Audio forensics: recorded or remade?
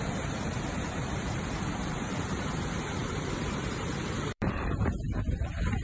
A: remade